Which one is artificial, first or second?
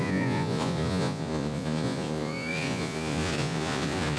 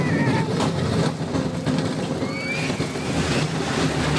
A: first